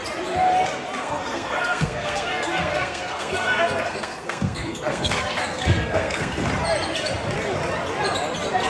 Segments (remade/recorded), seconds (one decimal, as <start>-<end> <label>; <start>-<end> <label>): 0.0-1.0 recorded; 1.0-6.4 remade; 6.4-8.7 recorded